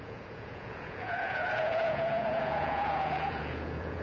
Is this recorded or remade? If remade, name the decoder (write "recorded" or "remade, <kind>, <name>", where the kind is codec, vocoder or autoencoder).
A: remade, vocoder, Vocos